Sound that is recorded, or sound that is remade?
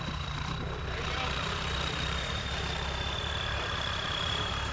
remade